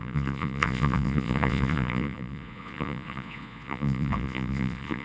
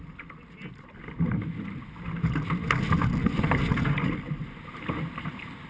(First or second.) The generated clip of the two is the first